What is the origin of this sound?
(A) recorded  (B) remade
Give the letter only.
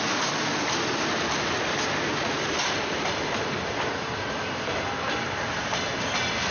A